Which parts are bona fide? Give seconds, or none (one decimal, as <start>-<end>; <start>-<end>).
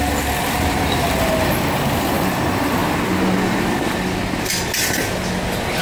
2.8-5.8